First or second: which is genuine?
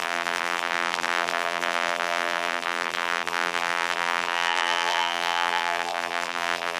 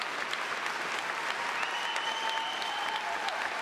second